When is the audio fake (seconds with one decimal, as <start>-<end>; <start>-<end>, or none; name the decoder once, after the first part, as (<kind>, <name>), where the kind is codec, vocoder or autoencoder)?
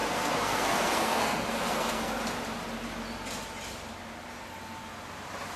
0.0-2.2 (codec, SNAC)